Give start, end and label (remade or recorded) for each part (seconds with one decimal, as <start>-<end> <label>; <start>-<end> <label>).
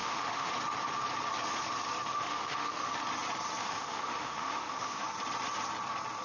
0.0-0.5 remade; 0.5-2.1 recorded; 2.1-3.0 remade; 3.0-3.6 recorded; 3.6-5.0 remade; 5.0-6.2 recorded